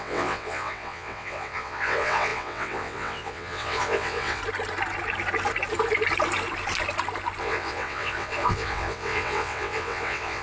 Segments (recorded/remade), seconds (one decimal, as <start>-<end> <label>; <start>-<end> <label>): 0.0-4.4 remade; 4.4-7.4 recorded; 7.4-10.4 remade